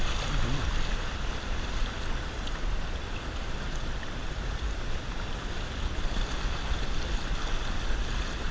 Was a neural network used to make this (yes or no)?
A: no